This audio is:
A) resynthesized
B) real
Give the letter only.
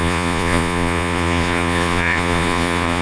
A